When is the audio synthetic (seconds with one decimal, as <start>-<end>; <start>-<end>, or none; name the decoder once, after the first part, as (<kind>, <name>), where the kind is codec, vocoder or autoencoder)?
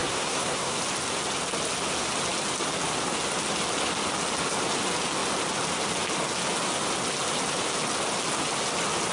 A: 0.0-0.8 (codec, SNAC)